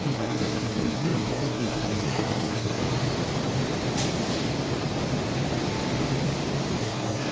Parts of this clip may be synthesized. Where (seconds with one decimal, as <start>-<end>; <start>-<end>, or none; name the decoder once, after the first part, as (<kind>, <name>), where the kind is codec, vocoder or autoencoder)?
0.0-2.8 (codec, SNAC); 6.8-7.3